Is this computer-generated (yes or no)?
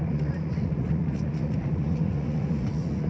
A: yes